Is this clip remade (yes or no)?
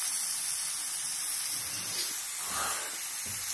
no